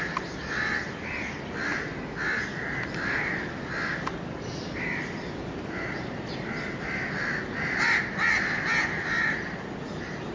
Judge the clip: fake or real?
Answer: real